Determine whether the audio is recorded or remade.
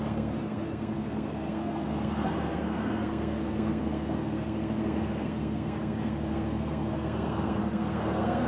remade